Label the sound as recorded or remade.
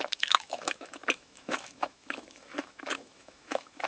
remade